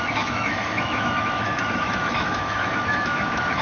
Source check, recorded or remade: remade